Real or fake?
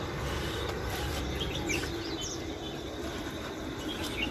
real